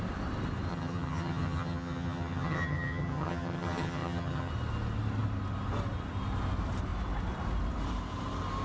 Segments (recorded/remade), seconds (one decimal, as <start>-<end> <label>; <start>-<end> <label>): 0.0-0.7 recorded; 0.7-4.5 remade; 4.5-8.6 recorded